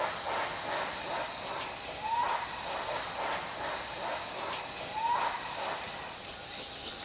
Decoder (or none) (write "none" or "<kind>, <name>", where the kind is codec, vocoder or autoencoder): none